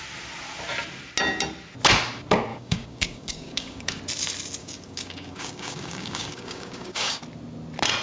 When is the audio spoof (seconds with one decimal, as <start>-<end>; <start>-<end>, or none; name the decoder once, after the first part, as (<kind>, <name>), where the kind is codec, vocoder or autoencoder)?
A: 2.5-4.0 (codec, DAC); 4.6-7.2